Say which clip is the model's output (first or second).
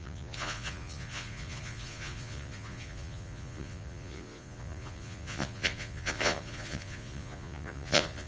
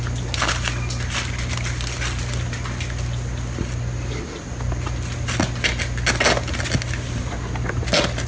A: first